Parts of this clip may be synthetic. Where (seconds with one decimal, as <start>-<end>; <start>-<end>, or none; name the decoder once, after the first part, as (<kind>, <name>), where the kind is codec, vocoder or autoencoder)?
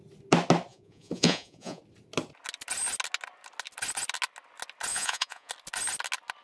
0.7-1.8 (vocoder, Vocos); 4.9-5.5